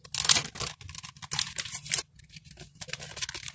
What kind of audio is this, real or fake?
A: real